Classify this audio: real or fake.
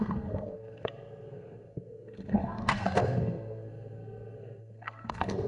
fake